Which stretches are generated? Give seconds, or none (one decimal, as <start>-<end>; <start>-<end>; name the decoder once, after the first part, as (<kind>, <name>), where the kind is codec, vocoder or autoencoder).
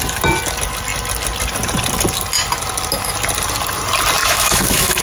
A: 4.2-5.0 (autoencoder, DAC-VAE)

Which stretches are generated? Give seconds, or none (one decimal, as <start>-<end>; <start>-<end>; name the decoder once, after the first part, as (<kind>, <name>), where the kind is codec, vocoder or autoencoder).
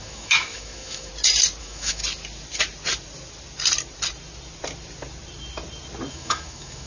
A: 0.0-1.1 (autoencoder, DAC-VAE); 1.6-2.0; 6.1-6.9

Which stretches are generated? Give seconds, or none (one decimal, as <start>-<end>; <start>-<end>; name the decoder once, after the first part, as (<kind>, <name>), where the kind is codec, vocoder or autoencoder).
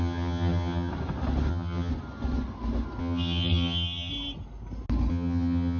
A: 0.0-0.9 (vocoder, HiFi-GAN); 1.5-1.9; 3.0-4.1; 5.1-5.8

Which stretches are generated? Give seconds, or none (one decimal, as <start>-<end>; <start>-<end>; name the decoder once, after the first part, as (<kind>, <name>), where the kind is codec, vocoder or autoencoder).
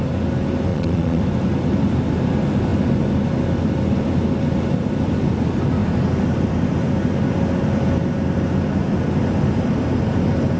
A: 0.7-1.2 (vocoder, Vocos)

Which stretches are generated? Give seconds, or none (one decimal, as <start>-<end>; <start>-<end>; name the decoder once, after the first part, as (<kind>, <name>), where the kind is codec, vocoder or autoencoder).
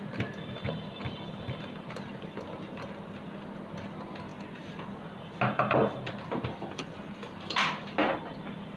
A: none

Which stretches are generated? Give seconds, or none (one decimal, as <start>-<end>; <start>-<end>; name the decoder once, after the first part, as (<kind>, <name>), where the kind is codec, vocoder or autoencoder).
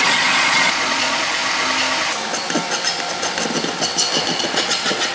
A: 0.0-1.4 (vocoder, Vocos); 4.3-5.1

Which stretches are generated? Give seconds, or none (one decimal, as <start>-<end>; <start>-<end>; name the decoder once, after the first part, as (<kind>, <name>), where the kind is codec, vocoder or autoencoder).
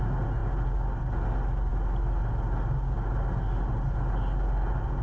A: none